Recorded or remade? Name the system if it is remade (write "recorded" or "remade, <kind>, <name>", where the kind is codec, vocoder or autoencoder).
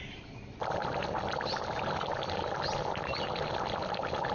recorded